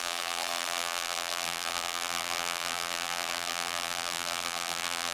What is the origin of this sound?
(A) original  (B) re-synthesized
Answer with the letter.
B